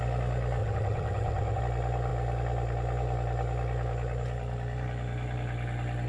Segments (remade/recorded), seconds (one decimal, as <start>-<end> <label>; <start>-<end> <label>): 0.0-0.6 recorded; 0.6-1.6 remade; 1.6-6.1 recorded